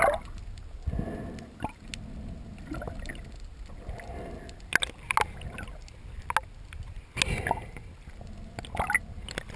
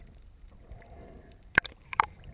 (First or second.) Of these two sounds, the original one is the first